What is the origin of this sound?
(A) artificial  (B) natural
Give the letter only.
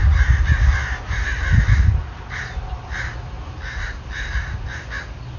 B